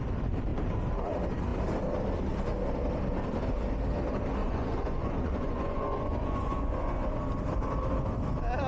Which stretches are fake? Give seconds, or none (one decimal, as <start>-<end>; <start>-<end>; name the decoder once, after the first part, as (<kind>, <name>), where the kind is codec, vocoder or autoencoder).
4.4-7.2 (vocoder, Vocos)